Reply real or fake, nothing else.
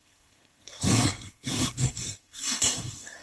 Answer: fake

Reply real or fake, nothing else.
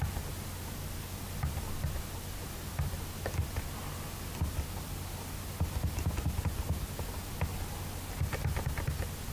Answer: real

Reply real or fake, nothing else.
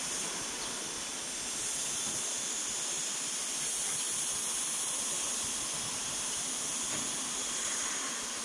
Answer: real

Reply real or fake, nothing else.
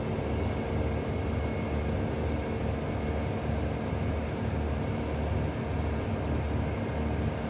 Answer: real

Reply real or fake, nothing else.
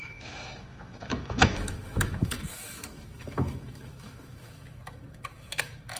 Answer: fake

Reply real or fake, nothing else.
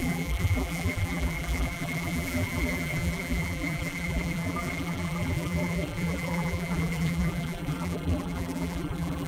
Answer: fake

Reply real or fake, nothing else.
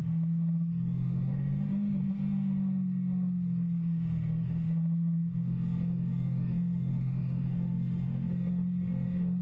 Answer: fake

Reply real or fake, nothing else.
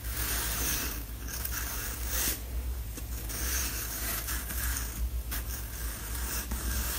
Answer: fake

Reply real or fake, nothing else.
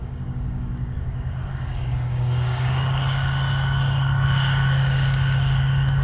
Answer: fake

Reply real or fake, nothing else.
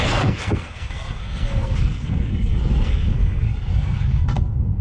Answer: fake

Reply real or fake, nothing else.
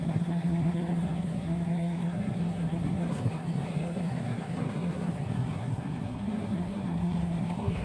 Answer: fake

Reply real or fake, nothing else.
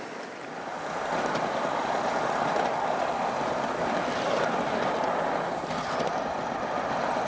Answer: real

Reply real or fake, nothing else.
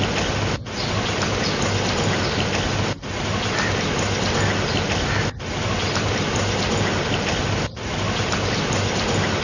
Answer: real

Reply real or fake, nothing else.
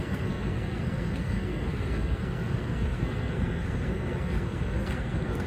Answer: fake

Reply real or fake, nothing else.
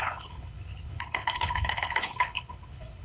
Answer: fake